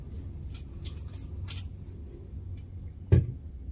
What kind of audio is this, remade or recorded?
recorded